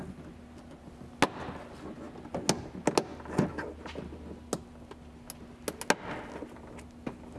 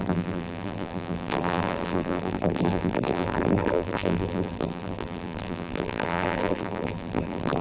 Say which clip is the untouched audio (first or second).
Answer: first